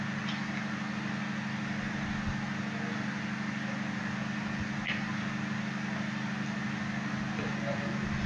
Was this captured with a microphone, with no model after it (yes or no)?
yes